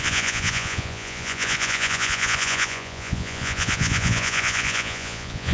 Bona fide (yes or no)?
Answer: no